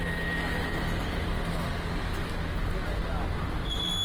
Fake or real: real